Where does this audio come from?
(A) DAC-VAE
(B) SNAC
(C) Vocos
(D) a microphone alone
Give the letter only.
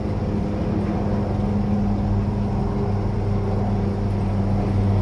D